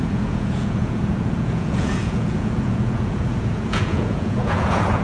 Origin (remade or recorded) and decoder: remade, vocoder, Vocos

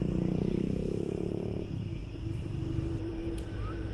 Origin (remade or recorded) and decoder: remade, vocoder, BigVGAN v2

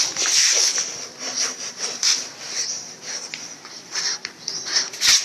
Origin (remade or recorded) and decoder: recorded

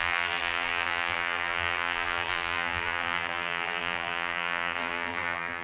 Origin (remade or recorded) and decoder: remade, vocoder, BigVGAN v2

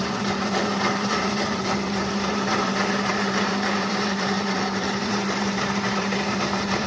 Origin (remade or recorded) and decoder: remade, vocoder, BigVGAN v2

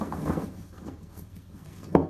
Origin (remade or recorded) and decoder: remade, codec, SNAC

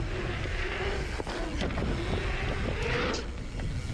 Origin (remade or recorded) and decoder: recorded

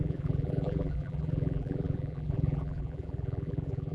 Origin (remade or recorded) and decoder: remade, vocoder, BigVGAN v2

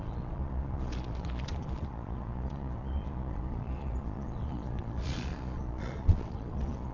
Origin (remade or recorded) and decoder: remade, vocoder, Vocos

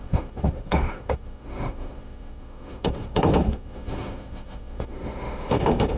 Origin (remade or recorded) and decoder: remade, autoencoder, DAC-VAE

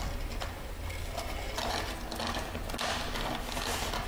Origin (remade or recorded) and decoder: recorded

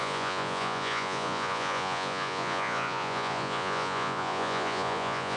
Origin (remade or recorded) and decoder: remade, vocoder, Vocos